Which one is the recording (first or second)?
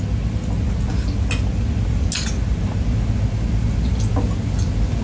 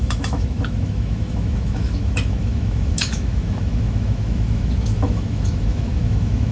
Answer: first